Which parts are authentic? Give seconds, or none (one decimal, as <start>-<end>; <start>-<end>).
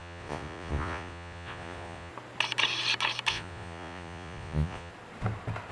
2.1-3.3; 4.9-5.7